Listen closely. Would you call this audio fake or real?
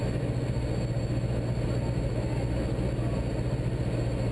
real